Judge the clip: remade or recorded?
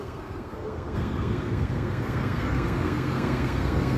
remade